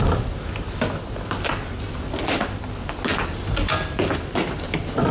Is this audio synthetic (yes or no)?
no